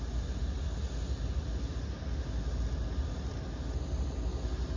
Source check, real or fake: real